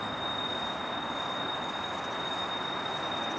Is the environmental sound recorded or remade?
recorded